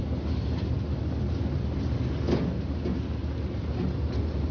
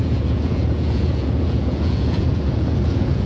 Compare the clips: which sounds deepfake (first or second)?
second